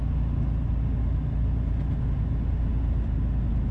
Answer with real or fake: real